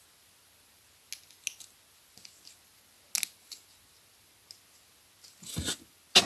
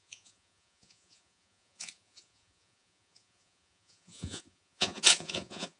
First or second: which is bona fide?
first